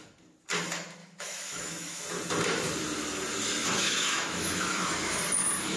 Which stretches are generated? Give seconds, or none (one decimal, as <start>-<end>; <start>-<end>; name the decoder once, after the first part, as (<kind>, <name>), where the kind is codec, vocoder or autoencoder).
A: 1.0-2.0 (autoencoder, DAC-VAE); 3.6-5.2